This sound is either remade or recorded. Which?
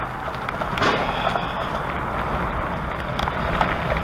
recorded